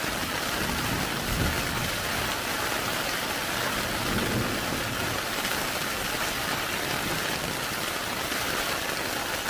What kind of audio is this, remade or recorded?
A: recorded